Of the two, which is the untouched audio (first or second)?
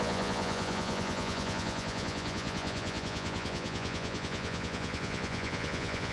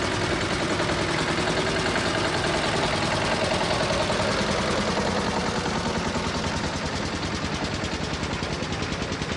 second